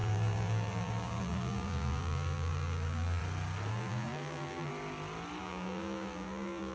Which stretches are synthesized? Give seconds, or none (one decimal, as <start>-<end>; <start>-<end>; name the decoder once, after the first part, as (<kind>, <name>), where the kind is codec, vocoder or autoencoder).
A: 0.0-3.2 (vocoder, BigVGAN v2); 3.7-4.7; 5.4-6.7